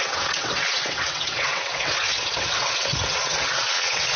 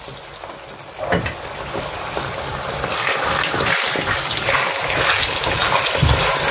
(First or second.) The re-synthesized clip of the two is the first